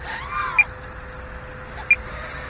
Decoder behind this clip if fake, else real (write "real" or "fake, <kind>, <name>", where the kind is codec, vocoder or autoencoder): real